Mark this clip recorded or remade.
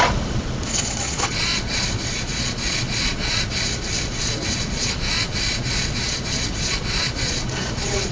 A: remade